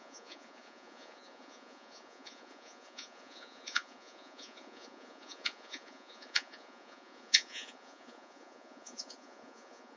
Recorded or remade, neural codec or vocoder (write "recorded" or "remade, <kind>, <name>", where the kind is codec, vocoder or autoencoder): remade, vocoder, Vocos